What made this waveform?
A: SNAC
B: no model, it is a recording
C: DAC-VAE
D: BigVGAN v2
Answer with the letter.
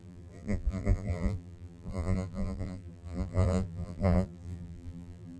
D